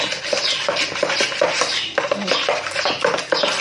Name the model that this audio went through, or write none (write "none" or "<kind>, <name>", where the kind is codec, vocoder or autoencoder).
none